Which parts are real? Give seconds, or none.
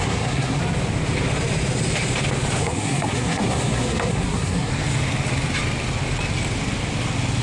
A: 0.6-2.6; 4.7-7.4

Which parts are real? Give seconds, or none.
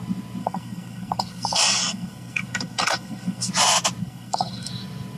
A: 0.0-0.4; 3.5-4.0; 4.7-5.2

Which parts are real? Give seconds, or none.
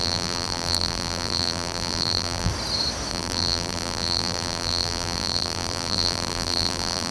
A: 2.5-3.1